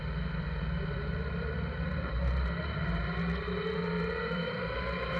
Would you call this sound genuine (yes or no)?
no